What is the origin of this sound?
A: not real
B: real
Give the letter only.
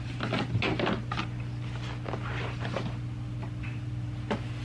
B